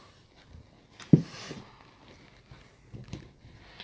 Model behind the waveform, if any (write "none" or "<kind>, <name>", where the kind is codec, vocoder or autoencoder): none